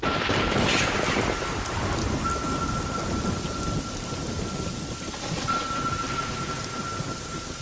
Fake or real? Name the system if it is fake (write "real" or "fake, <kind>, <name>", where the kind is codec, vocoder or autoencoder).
real